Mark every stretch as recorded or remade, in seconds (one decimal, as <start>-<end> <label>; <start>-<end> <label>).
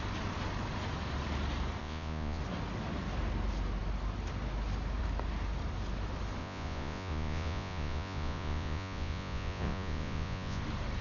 0.0-1.8 recorded; 1.8-2.4 remade; 2.4-6.4 recorded; 6.4-10.6 remade; 10.6-11.0 recorded